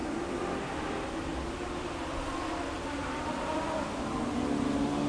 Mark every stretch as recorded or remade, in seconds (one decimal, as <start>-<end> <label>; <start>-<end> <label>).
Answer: 0.0-0.5 remade; 0.5-1.3 recorded; 1.3-2.0 remade; 2.0-3.0 recorded; 3.0-4.0 remade; 4.0-5.1 recorded